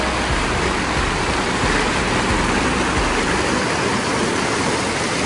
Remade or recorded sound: recorded